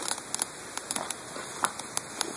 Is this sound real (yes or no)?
yes